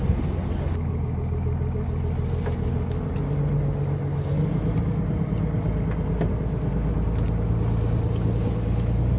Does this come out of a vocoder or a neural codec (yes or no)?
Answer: no